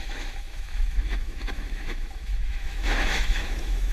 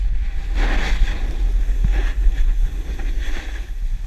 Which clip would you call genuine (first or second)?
second